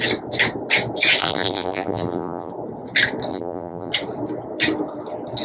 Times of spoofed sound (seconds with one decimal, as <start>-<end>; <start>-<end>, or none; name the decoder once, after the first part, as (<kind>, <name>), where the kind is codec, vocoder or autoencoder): 1.2-2.5 (vocoder, BigVGAN v2); 3.3-3.9